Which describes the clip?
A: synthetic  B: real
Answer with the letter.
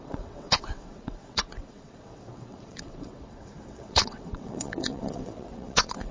A